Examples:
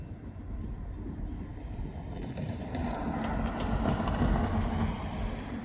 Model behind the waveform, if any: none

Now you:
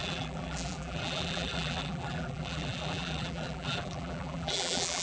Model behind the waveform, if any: vocoder, BigVGAN v2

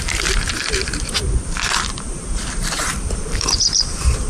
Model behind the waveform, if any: vocoder, BigVGAN v2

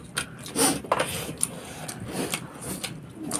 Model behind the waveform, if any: none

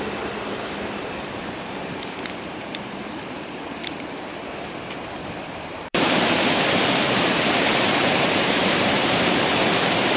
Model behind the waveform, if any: vocoder, BigVGAN v2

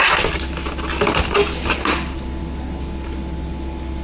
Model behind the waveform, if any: none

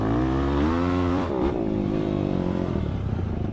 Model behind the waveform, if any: vocoder, BigVGAN v2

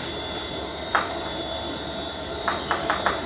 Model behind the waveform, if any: vocoder, BigVGAN v2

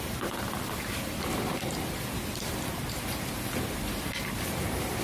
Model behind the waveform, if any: none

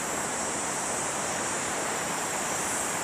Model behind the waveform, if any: vocoder, BigVGAN v2